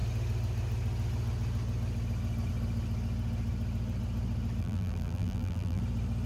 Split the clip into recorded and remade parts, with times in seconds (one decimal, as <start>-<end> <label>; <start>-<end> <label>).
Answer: 0.0-4.6 recorded; 4.6-5.8 remade; 5.8-6.3 recorded